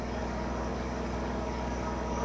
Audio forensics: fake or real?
fake